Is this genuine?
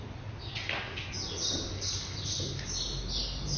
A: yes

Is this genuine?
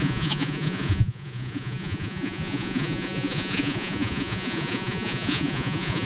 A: no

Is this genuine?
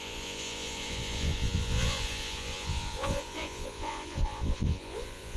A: no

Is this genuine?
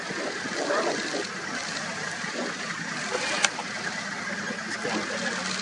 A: yes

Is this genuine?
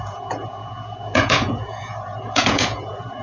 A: no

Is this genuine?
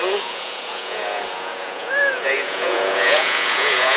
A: no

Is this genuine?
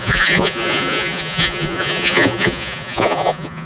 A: no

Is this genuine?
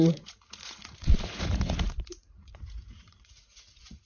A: no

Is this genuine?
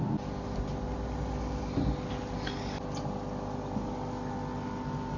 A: yes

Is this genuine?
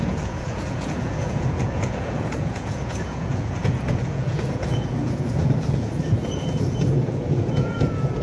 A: no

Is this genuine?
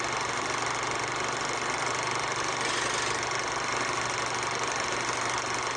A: yes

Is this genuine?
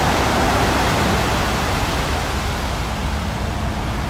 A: yes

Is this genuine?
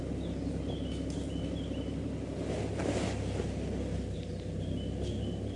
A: yes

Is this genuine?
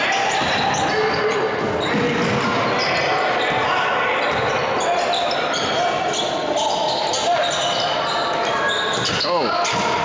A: yes